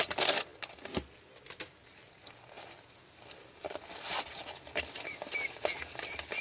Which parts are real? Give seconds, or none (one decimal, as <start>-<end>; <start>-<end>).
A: 0.0-6.4